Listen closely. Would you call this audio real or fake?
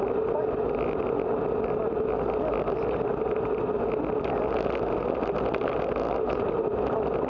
real